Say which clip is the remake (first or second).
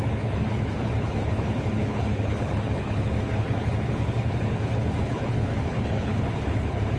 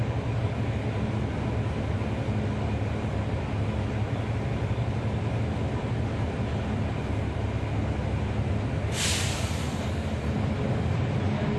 first